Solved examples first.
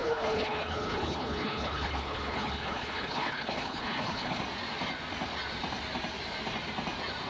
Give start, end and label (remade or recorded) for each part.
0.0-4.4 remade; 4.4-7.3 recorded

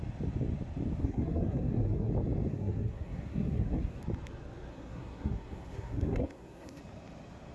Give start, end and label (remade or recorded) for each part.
0.0-1.0 recorded; 1.0-2.1 remade; 2.1-2.5 recorded; 2.5-4.0 remade; 4.0-4.7 recorded; 4.7-6.8 remade; 6.8-7.5 recorded

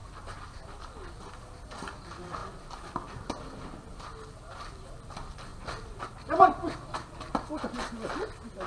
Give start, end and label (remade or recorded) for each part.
0.0-1.1 remade; 1.1-2.4 recorded; 2.4-5.1 remade; 5.1-5.5 recorded; 5.5-6.1 remade; 6.1-8.7 recorded

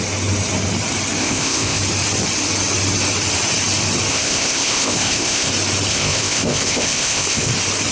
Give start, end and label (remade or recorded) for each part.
0.0-1.2 recorded; 1.2-1.8 remade; 1.8-4.1 recorded; 4.1-5.5 remade; 5.5-5.9 recorded; 5.9-7.5 remade; 7.5-7.9 recorded

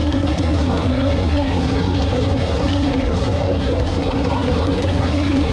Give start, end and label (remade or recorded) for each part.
0.0-5.5 remade